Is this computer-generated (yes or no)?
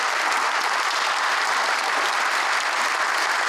no